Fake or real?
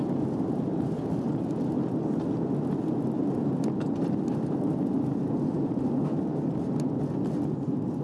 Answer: real